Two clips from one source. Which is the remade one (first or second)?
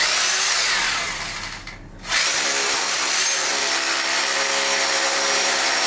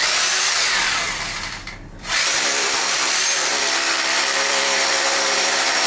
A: second